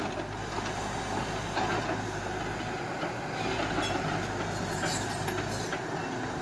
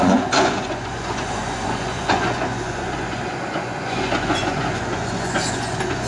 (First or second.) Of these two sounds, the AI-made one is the second